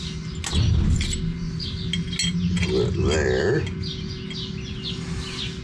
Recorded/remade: recorded